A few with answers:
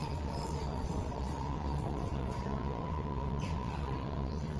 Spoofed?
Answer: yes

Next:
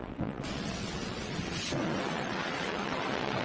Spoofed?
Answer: yes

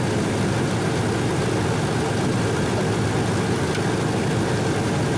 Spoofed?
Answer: no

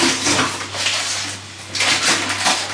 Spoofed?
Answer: no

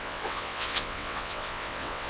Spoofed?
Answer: yes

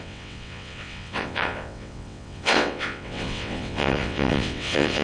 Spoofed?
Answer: yes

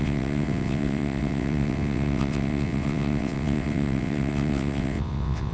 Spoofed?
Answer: yes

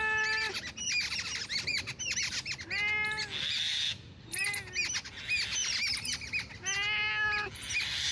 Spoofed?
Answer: no